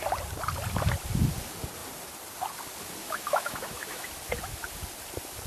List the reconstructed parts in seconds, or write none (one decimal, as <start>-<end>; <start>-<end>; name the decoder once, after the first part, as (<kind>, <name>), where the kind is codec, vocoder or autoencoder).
3.0-4.1 (autoencoder, DAC-VAE)